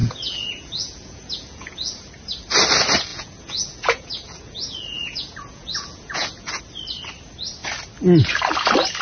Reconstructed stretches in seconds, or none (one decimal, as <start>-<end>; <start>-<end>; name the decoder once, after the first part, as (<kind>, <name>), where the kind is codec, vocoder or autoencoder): 0.0-2.1 (vocoder, Vocos); 3.1-6.6